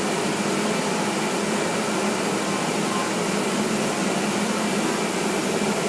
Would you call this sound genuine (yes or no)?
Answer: yes